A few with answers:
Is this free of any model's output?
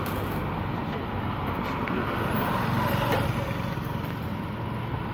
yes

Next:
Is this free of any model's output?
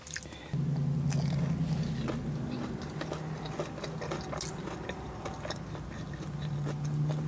yes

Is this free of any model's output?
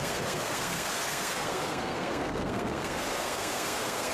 no